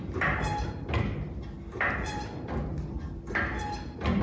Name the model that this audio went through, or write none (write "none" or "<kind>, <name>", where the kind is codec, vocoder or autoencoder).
none